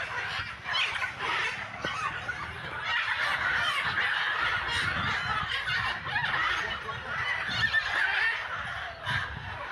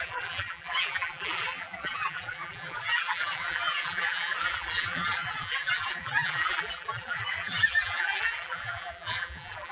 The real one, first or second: first